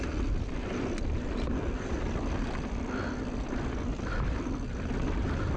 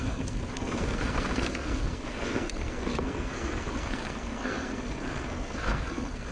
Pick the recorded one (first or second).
first